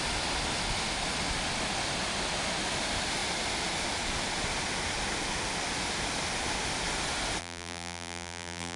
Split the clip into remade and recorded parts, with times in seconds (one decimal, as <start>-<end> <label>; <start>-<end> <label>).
0.0-7.4 recorded; 7.4-8.8 remade

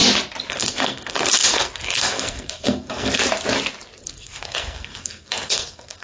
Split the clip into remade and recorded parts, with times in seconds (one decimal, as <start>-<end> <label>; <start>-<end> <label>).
0.0-0.5 recorded; 0.5-3.2 remade; 3.2-4.0 recorded; 4.0-6.0 remade